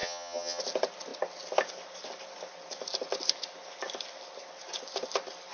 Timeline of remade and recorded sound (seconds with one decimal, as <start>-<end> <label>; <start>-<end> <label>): 0.0-0.6 remade; 0.6-5.5 recorded